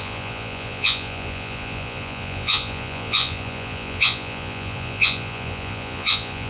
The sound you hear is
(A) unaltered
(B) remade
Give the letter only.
B